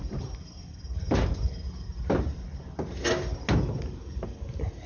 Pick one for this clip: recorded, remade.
recorded